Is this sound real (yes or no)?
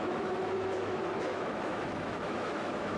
no